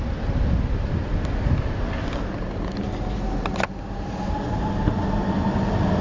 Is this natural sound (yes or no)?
yes